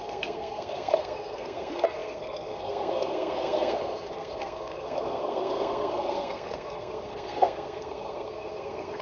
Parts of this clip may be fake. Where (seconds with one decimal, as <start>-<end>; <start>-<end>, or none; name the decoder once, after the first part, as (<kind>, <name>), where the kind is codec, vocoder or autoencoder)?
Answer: 0.0-9.0 (codec, SNAC)